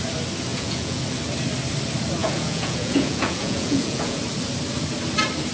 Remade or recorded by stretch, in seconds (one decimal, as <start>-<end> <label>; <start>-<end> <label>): 0.0-0.5 recorded; 0.5-1.0 remade; 1.0-2.2 recorded; 2.2-4.2 remade; 4.2-5.5 recorded